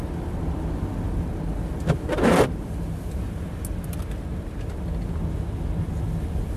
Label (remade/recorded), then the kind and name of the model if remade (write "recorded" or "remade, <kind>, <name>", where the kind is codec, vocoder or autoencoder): recorded